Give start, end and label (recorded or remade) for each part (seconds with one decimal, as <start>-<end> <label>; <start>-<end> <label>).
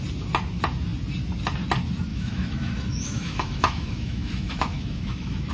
0.0-2.1 recorded; 2.1-5.5 remade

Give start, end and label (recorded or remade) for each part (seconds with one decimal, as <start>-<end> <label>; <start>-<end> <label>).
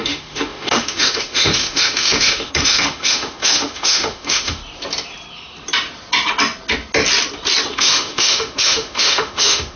0.0-4.6 remade; 4.6-7.7 recorded; 7.7-9.8 remade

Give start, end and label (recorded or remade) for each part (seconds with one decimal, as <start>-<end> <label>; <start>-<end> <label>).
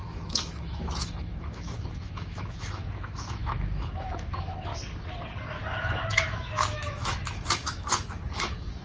0.0-4.7 remade; 4.7-5.8 recorded; 5.8-8.8 remade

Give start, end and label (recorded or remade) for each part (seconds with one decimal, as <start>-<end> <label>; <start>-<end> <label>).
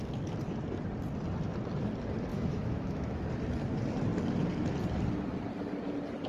0.0-2.3 recorded; 2.3-3.2 remade; 3.2-6.3 recorded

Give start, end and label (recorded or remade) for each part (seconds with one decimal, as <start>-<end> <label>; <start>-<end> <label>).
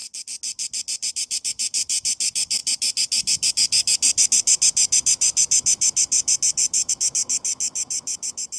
0.0-1.1 recorded; 1.1-8.6 remade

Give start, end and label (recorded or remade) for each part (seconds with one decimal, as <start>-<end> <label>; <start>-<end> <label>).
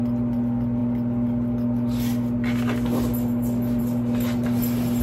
0.0-5.0 recorded